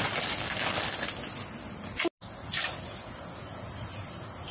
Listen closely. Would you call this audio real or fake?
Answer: real